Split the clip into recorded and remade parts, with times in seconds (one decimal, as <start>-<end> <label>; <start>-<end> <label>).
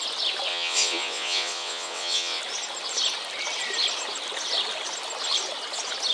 0.0-0.5 recorded; 0.5-2.4 remade; 2.4-6.1 recorded